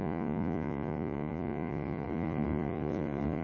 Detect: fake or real fake